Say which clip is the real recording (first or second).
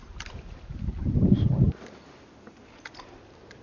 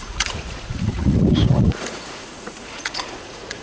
first